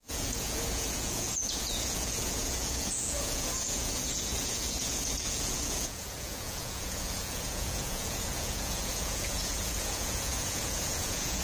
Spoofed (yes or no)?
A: yes